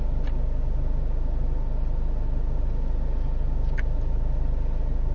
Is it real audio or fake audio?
real